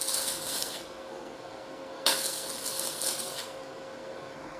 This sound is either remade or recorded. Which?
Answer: remade